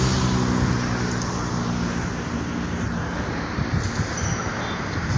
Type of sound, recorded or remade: recorded